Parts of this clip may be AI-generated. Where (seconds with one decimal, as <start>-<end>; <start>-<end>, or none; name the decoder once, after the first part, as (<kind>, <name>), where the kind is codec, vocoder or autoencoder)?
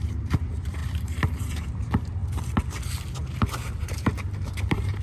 0.0-2.2 (vocoder, BigVGAN v2); 3.8-5.0